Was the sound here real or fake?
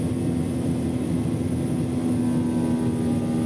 real